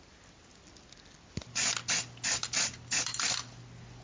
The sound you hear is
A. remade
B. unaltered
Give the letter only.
B